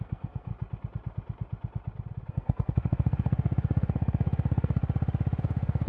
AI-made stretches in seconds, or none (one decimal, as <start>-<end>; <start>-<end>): 0.0-0.5; 2.3-4.8; 5.4-5.9